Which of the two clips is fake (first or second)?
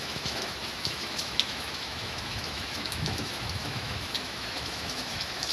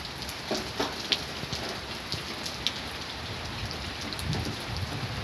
first